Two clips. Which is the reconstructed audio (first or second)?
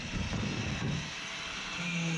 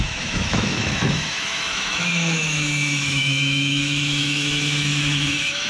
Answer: second